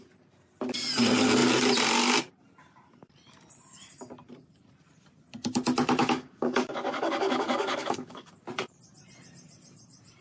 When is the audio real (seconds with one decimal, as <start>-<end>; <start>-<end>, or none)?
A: 0.0-6.0; 8.3-10.2